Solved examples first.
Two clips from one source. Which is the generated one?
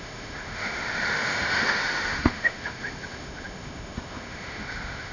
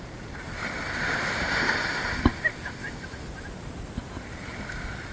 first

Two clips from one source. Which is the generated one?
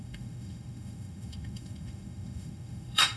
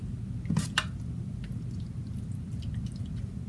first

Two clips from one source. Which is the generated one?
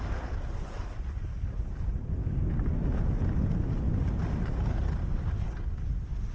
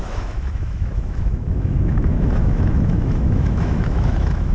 second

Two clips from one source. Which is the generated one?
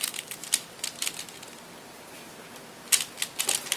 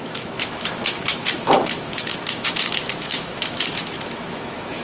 second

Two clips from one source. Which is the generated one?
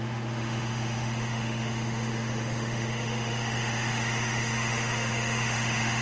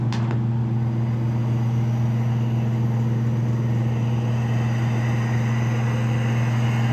first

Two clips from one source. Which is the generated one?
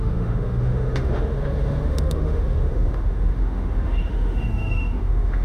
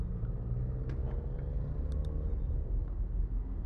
first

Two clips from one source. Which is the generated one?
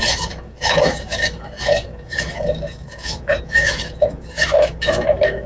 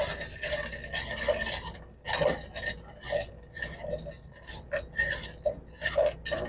first